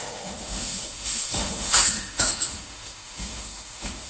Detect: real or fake fake